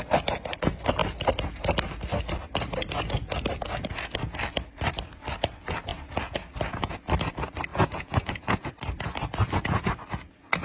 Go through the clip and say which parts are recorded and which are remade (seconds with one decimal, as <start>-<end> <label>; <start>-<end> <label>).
0.0-7.7 recorded; 7.7-8.7 remade; 8.7-10.6 recorded